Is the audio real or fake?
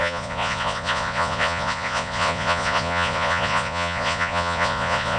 fake